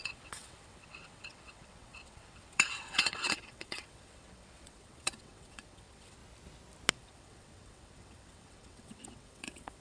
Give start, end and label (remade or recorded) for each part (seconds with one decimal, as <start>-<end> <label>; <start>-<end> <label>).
0.0-6.2 remade; 6.2-6.9 recorded; 6.9-9.8 remade